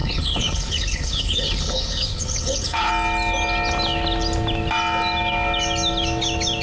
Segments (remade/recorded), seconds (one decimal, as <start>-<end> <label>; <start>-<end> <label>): 0.0-2.9 remade; 2.9-6.6 recorded